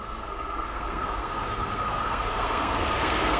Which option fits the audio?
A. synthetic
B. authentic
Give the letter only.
A